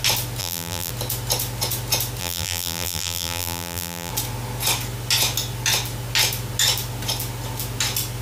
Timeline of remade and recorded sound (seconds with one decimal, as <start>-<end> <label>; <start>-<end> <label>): 0.0-0.4 recorded; 0.4-0.9 remade; 0.9-2.2 recorded; 2.2-4.1 remade; 4.1-8.2 recorded